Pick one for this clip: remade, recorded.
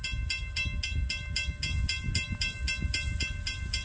recorded